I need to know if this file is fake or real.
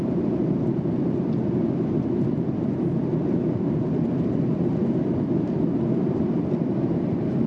fake